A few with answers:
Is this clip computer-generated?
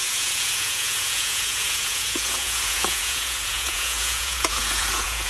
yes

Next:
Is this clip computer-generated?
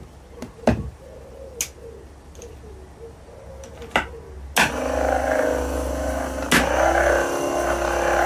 no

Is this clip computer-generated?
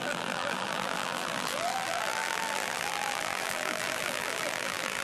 yes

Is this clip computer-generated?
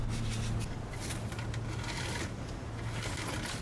no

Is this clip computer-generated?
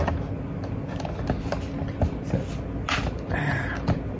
no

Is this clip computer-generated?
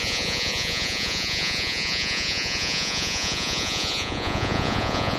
yes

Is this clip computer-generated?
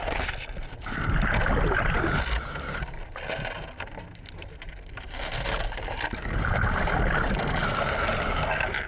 no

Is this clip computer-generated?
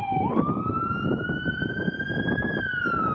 yes